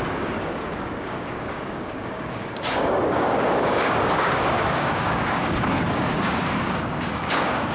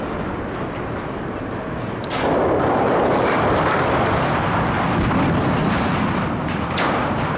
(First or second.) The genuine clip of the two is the second